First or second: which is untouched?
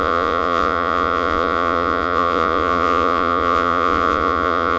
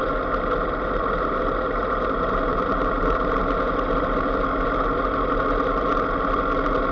second